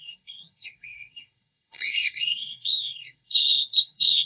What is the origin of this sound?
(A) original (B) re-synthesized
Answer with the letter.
B